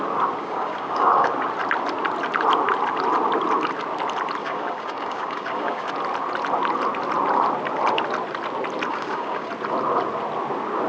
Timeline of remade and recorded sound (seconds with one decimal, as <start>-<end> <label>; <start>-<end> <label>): 0.0-0.4 recorded; 0.4-1.3 remade; 1.3-4.4 recorded; 4.4-5.9 remade; 5.9-8.9 recorded; 8.9-9.5 remade; 9.5-10.9 recorded